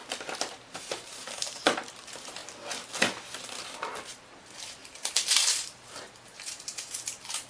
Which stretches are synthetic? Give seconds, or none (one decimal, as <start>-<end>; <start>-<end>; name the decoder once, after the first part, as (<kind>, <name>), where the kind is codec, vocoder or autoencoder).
0.5-2.4 (vocoder, BigVGAN v2); 4.1-7.5